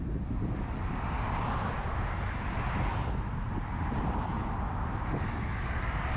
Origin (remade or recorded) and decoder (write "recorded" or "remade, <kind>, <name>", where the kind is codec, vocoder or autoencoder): recorded